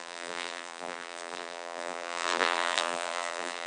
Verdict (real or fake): fake